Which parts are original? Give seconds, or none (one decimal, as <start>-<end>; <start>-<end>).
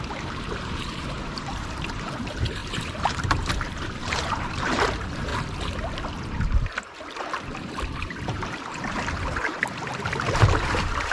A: 5.3-6.2